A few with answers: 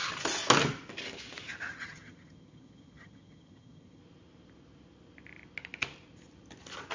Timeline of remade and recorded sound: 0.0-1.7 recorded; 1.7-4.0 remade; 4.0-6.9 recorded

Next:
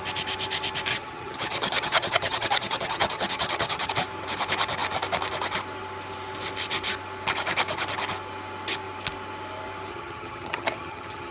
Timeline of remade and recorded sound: 0.0-0.9 recorded; 0.9-3.9 remade; 3.9-9.9 recorded; 9.9-11.3 remade

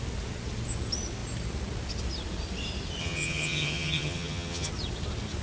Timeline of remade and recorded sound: 0.0-3.0 recorded; 3.0-4.7 remade; 4.7-5.4 recorded

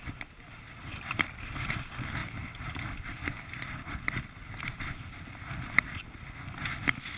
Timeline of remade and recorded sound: 0.0-7.2 recorded

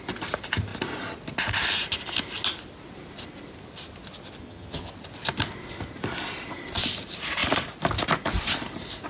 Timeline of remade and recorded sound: 0.0-4.4 recorded; 4.4-4.9 remade; 4.9-9.1 recorded

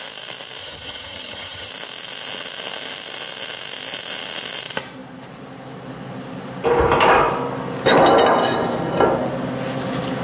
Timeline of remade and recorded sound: 0.0-0.6 recorded; 0.6-1.7 remade; 1.7-10.2 recorded

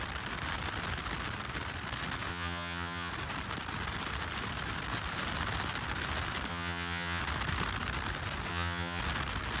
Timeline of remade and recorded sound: 0.0-2.3 recorded; 2.3-3.1 remade; 3.1-6.5 recorded; 6.5-7.2 remade; 7.2-8.5 recorded; 8.5-9.0 remade; 9.0-9.6 recorded

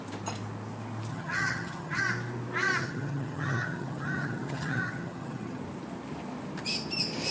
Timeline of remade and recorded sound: 0.0-1.1 recorded; 1.1-2.0 remade; 2.0-2.8 recorded; 2.8-5.6 remade; 5.6-7.3 recorded